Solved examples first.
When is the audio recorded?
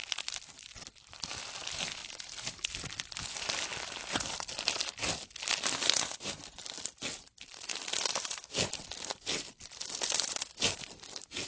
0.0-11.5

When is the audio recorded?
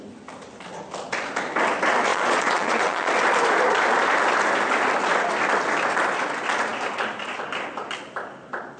0.0-2.1; 3.1-8.8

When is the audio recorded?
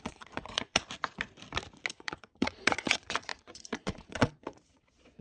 0.8-1.9